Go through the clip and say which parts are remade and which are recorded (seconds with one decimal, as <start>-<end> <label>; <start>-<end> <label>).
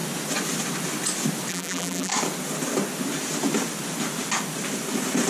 0.0-1.5 recorded; 1.5-2.1 remade; 2.1-5.3 recorded